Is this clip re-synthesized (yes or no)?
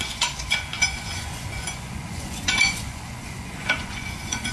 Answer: yes